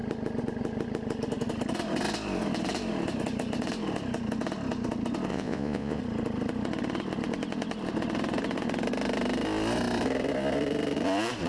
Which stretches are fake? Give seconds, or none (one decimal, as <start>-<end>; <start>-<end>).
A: 5.3-6.0